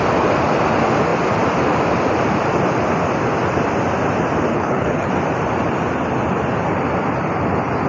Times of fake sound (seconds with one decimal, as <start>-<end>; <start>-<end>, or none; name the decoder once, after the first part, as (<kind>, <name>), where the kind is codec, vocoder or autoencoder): 4.5-5.1 (codec, HILCodec)